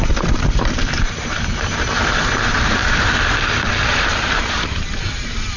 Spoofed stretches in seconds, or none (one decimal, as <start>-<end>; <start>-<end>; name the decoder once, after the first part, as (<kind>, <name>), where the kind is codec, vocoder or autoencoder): 0.0-2.8 (vocoder, BigVGAN v2); 3.8-5.6